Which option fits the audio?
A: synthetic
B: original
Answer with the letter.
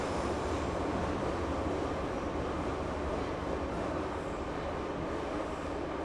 B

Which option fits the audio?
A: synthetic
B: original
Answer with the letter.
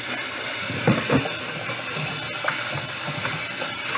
B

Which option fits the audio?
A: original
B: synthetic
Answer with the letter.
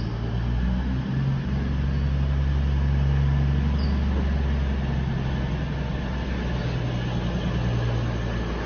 A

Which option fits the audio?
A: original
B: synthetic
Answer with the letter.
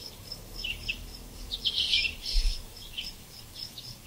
B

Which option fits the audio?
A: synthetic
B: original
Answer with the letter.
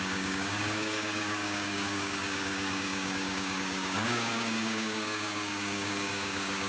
A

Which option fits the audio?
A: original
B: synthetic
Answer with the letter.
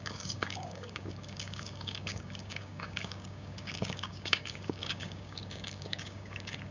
B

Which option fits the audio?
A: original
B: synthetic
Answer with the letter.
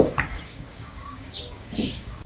B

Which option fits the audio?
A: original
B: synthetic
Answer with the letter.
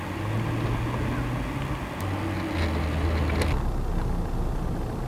A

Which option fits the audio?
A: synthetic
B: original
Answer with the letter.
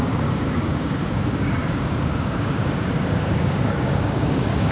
A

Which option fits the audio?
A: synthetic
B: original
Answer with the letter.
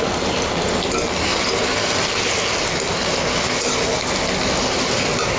B